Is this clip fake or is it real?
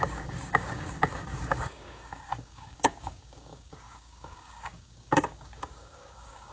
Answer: fake